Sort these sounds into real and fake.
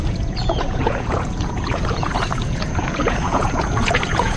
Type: fake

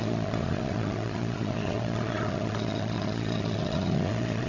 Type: fake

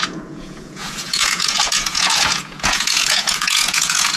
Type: fake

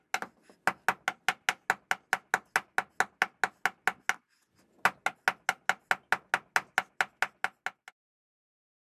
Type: real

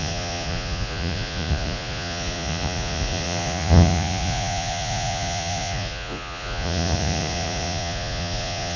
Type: fake